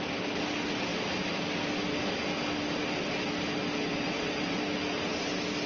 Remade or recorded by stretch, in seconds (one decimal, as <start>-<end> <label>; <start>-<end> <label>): 0.0-3.9 recorded; 3.9-4.6 remade; 4.6-5.7 recorded